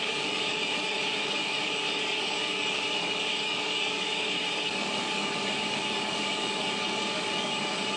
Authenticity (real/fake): fake